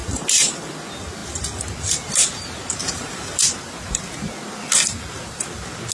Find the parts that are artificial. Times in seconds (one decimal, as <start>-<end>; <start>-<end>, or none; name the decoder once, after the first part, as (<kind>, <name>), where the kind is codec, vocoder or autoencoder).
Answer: 0.0-0.7 (vocoder, BigVGAN v2); 2.8-3.4